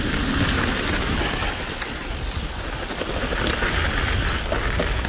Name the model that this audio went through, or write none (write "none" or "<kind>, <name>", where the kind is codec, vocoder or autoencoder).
none